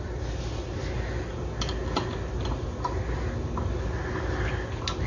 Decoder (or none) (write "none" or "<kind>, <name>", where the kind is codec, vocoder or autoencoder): none